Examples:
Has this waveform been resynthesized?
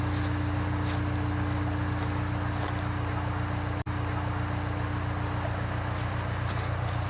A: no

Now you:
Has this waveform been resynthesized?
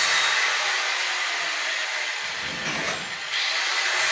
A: yes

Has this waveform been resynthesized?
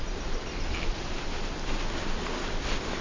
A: no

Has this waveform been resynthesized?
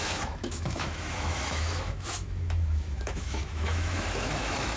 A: yes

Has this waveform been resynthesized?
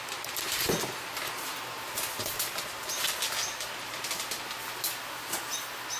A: no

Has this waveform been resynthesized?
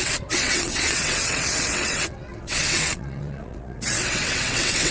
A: yes